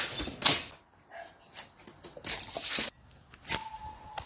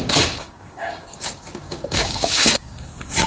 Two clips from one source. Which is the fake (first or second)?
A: second